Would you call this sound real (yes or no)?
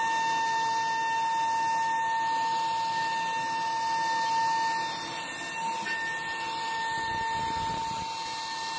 yes